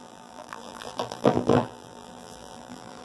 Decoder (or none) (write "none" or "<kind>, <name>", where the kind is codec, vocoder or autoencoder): vocoder, BigVGAN v2